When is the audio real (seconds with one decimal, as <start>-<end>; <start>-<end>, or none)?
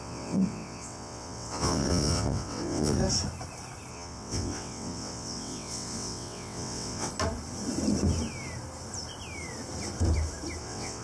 3.0-3.9; 7.1-10.6